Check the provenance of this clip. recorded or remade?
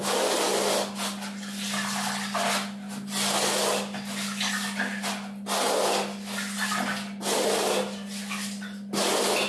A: recorded